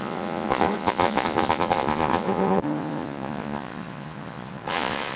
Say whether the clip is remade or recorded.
remade